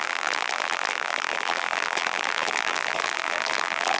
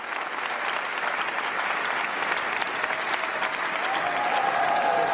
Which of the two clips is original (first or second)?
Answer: second